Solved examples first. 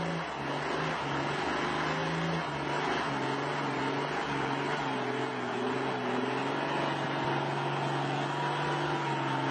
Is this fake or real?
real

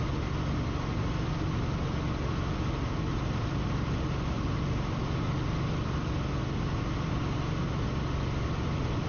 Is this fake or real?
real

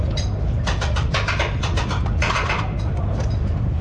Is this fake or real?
real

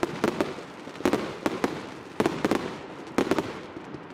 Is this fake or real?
real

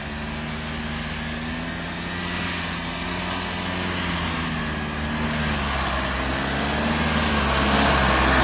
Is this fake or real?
real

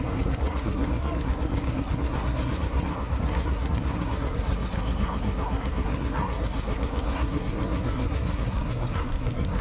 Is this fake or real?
fake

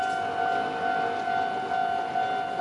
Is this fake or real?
real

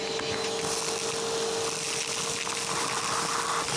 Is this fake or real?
real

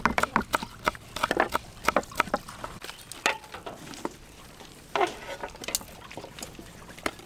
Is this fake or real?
real